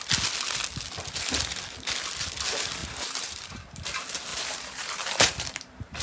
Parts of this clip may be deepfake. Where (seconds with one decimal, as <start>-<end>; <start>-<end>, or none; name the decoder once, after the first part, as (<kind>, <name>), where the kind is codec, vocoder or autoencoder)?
2.8-3.6 (vocoder, BigVGAN v2); 4.3-6.0